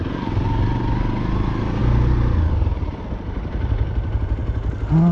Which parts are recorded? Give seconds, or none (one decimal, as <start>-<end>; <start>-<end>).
1.8-2.5; 4.4-5.1